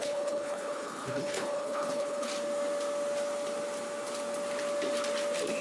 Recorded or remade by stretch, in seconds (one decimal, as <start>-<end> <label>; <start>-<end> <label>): 0.0-2.3 remade; 2.3-5.6 recorded